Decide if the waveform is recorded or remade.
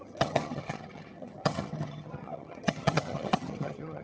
remade